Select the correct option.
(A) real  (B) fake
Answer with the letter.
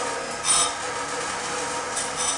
A